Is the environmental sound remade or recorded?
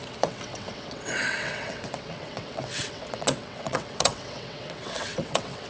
remade